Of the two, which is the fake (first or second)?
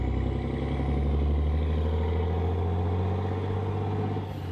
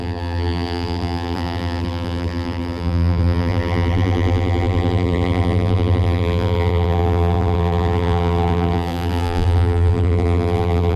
second